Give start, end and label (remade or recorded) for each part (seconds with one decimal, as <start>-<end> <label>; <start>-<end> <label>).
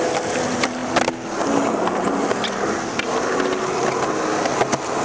0.0-5.0 recorded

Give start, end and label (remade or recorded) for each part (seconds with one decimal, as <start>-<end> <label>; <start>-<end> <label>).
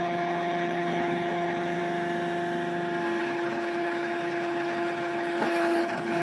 0.0-1.8 remade; 1.8-3.2 recorded; 3.2-6.2 remade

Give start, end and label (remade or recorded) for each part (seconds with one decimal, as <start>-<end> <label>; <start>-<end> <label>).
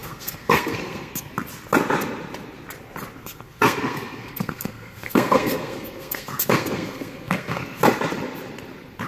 0.0-1.3 remade; 1.3-3.2 recorded; 3.2-7.8 remade; 7.8-9.1 recorded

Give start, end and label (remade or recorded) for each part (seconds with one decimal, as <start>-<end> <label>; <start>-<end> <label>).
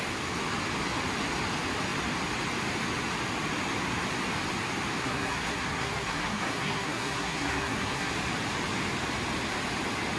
0.0-5.0 recorded; 5.0-8.1 remade; 8.1-10.2 recorded